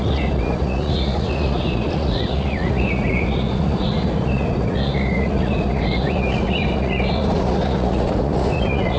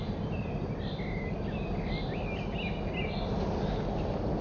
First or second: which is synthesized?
first